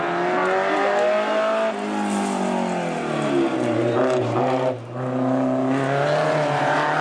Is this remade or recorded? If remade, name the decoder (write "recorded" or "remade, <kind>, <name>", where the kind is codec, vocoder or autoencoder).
recorded